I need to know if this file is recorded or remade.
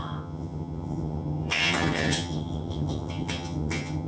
remade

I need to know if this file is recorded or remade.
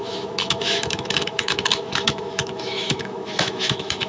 remade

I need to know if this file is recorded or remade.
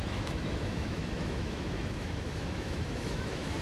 remade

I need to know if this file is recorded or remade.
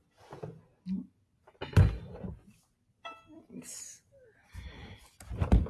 recorded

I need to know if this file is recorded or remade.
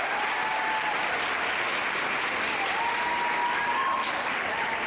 recorded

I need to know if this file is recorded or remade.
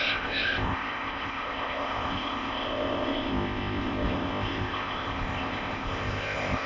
remade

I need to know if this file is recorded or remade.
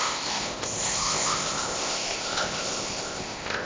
remade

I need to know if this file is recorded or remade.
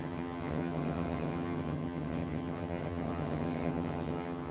remade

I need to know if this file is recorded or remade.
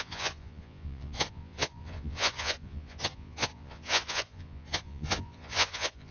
remade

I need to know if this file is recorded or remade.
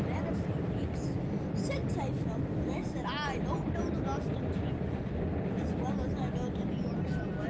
recorded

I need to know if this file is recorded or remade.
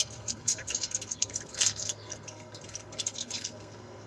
remade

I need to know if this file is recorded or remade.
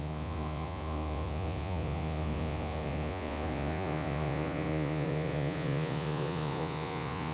remade